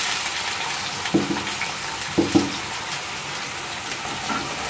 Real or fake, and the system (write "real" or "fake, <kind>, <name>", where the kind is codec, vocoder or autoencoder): real